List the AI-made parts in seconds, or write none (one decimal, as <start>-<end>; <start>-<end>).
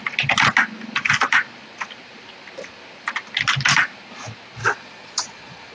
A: 4.6-5.7